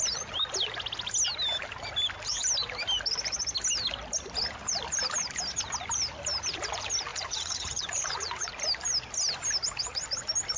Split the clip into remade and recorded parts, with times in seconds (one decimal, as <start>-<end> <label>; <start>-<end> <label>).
0.0-7.1 recorded; 7.1-8.5 remade; 8.5-10.6 recorded